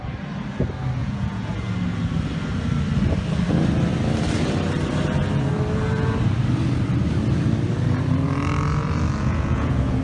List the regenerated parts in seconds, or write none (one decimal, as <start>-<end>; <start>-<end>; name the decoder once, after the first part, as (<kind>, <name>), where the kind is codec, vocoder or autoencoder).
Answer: 1.0-1.7 (vocoder, Vocos); 9.2-10.0